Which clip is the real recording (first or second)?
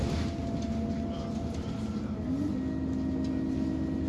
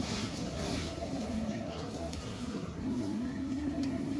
first